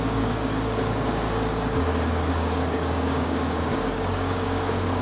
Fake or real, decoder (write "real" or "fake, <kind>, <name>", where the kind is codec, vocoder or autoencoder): fake, codec, DAC